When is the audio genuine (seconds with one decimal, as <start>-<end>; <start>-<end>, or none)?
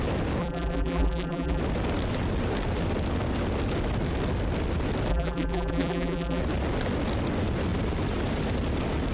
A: 0.0-0.4; 1.6-5.1; 6.4-9.1